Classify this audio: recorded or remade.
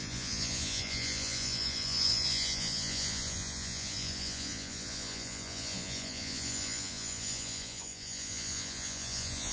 remade